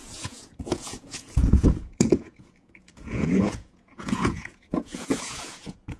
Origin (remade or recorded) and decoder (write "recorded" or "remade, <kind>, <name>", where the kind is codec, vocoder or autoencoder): remade, vocoder, Vocos